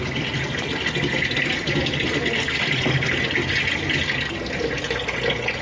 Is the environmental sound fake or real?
real